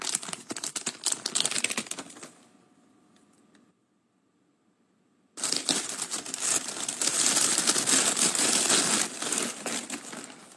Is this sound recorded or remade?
recorded